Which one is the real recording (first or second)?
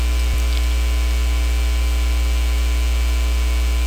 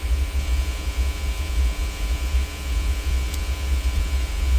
first